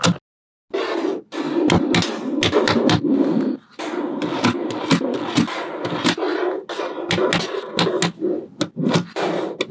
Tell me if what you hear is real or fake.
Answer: real